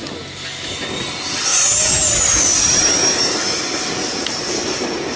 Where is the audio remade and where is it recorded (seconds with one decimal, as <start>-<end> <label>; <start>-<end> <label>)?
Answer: 0.0-5.2 recorded